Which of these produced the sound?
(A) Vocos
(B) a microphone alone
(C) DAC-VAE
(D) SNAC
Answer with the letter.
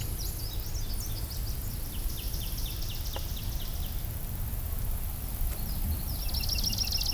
B